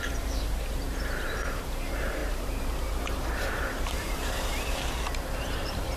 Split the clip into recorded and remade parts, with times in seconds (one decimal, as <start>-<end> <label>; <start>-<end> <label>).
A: 0.0-6.0 remade